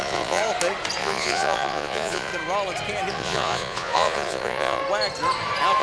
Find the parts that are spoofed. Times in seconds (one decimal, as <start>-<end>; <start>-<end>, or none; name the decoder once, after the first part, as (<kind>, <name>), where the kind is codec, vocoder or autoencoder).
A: 0.0-0.4 (vocoder, Vocos); 1.0-2.3; 3.1-4.8